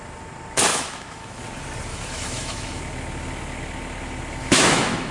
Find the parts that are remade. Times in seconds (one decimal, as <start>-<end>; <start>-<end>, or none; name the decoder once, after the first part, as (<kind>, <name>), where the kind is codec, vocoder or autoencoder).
0.7-1.4 (autoencoder, DAC-VAE); 1.9-2.8; 4.4-5.1